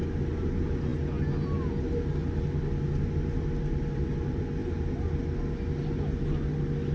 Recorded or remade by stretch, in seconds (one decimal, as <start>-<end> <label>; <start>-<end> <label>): 0.0-6.9 recorded

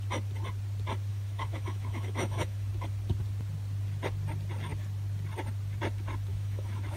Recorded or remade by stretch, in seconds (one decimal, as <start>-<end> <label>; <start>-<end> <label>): 0.0-1.1 recorded; 1.1-2.7 remade; 2.7-6.3 recorded; 6.3-7.0 remade

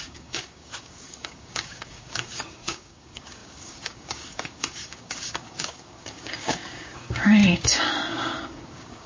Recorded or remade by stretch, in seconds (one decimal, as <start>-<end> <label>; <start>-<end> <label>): 0.0-9.1 remade